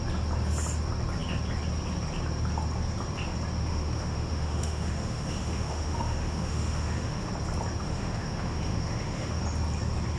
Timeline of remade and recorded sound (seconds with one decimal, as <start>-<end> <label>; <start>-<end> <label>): 0.0-3.7 recorded; 3.7-7.3 remade; 7.3-7.8 recorded; 7.8-9.4 remade; 9.4-10.2 recorded